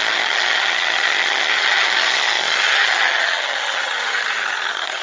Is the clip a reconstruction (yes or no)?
yes